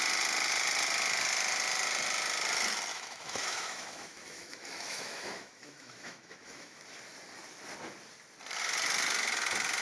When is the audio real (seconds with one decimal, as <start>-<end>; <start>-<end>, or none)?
0.0-2.9; 6.8-9.8